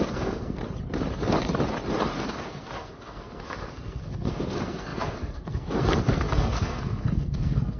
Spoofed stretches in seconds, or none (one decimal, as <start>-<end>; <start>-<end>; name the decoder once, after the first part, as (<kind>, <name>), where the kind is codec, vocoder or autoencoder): 0.0-0.6 (codec, SNAC); 2.2-7.8